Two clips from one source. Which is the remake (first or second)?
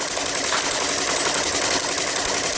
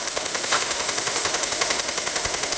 second